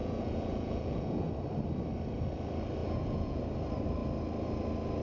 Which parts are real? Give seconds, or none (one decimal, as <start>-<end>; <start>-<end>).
1.3-2.8; 3.4-5.0